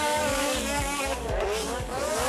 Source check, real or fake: fake